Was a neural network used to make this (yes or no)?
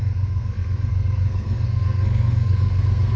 yes